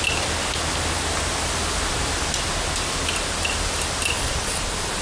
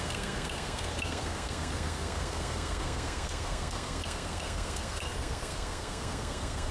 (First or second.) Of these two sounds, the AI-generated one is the second